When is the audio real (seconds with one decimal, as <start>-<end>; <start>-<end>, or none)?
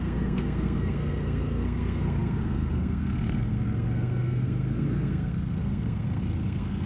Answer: none